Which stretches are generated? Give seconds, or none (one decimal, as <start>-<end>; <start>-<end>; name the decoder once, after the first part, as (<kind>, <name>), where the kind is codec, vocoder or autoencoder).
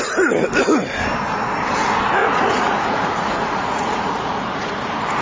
2.2-4.8 (vocoder, Vocos)